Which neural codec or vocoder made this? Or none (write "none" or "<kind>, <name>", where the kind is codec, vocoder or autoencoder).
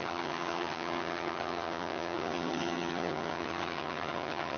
vocoder, HiFi-GAN